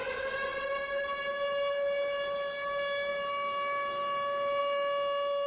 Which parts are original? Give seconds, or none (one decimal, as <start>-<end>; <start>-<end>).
0.0-5.5